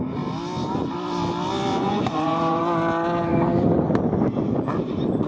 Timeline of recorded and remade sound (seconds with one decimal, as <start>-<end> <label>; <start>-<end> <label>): 0.0-1.7 recorded; 1.7-2.6 remade; 2.6-5.3 recorded